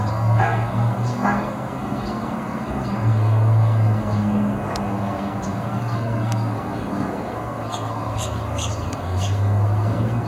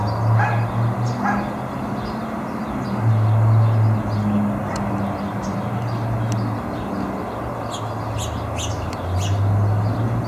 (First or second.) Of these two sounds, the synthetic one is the first